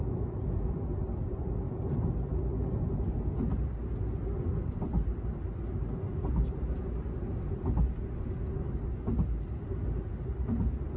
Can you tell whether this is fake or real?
real